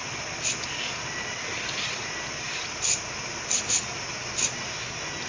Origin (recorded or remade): recorded